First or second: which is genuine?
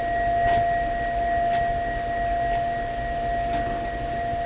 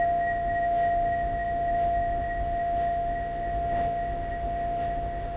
first